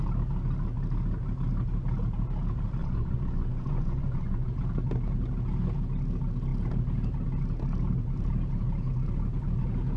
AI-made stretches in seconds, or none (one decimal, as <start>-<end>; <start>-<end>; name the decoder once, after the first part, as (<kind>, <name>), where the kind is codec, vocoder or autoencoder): 2.8-4.5 (vocoder, Vocos)